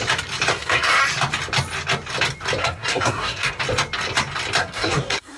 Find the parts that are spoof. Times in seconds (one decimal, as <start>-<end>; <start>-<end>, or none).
0.5-1.0; 2.6-3.6; 4.6-5.4